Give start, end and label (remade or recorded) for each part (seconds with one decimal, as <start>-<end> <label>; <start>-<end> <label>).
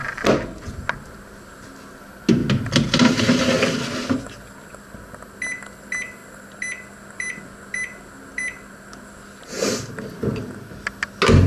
0.0-11.5 recorded